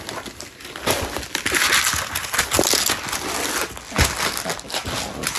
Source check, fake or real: real